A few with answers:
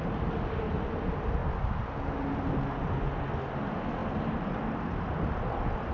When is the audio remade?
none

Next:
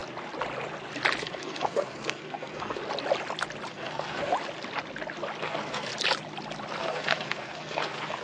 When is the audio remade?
1.2-2.8 (codec, SNAC); 3.7-4.3; 5.4-5.9; 6.8-8.2